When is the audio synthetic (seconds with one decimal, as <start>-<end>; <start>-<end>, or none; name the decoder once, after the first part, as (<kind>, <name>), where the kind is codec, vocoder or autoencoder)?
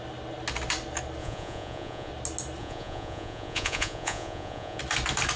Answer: 1.2-2.1 (vocoder, Vocos); 2.6-4.8